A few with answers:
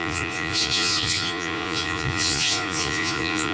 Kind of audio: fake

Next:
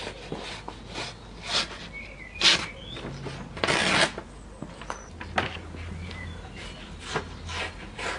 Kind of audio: real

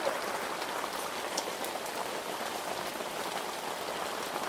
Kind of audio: real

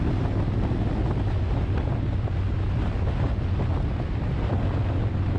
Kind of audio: real